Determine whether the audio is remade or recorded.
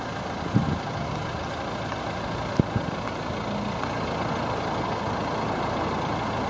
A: recorded